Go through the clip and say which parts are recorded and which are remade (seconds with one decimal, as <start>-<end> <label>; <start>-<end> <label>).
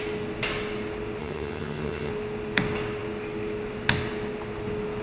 0.0-1.2 recorded; 1.2-2.1 remade; 2.1-5.0 recorded